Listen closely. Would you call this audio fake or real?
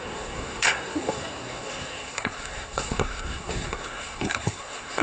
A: fake